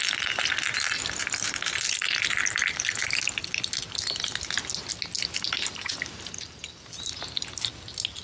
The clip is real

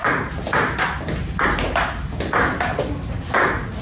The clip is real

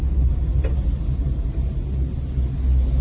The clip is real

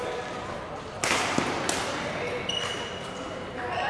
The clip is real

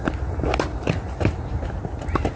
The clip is real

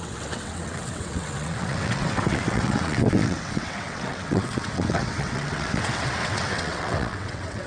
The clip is fake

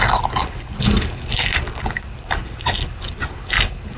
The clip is real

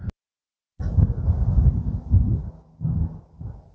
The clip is real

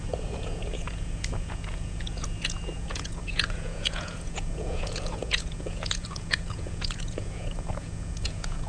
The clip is fake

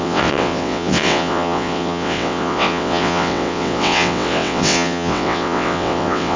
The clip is fake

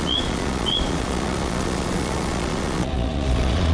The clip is fake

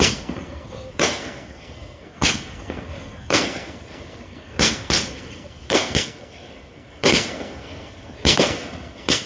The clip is fake